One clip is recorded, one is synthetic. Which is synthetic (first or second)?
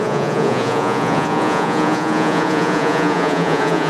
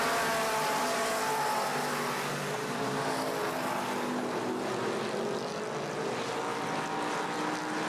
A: first